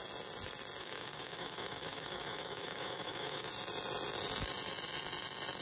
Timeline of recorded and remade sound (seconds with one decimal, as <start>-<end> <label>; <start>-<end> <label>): 0.0-0.8 recorded; 0.8-3.5 remade; 3.5-5.6 recorded